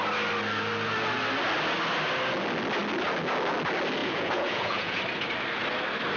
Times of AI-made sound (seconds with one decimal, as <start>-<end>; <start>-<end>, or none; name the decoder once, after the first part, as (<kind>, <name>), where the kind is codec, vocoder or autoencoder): 4.0-5.0 (vocoder, Vocos)